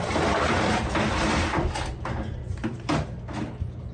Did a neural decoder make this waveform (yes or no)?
no